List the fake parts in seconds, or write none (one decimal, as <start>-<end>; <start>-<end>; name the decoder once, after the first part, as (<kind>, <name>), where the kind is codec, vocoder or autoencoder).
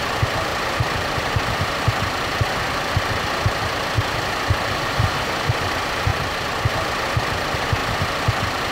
0.5-3.2 (vocoder, BigVGAN v2); 6.1-6.7